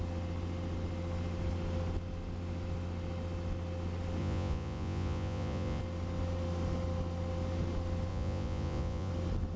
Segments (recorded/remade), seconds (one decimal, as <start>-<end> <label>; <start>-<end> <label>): 0.0-4.2 recorded; 4.2-5.8 remade; 5.8-8.1 recorded; 8.1-9.1 remade; 9.1-9.6 recorded